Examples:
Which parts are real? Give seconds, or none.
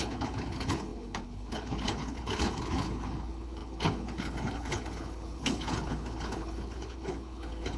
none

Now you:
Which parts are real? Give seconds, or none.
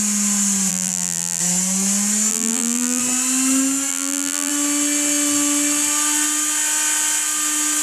0.0-0.7; 1.4-2.3; 3.0-3.9; 4.5-7.8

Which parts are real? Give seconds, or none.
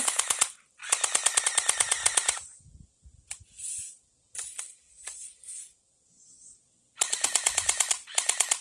0.8-1.4; 4.1-4.7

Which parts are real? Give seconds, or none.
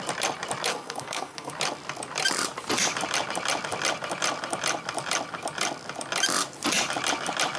0.0-0.7; 1.5-7.6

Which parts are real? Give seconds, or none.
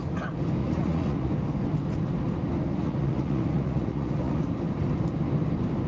0.0-0.6; 1.3-2.8; 4.4-5.9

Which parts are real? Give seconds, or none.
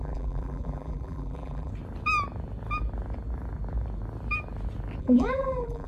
1.7-5.0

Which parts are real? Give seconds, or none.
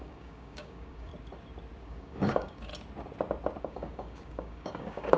1.1-1.8; 2.7-3.6